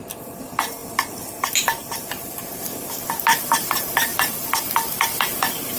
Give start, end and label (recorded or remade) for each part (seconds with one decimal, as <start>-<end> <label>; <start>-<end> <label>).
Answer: 0.0-4.1 recorded; 4.1-4.6 remade; 4.6-5.8 recorded